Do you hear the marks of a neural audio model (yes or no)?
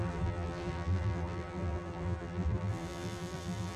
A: yes